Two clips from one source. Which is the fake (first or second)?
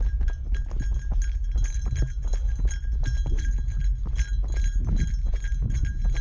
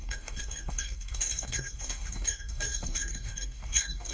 second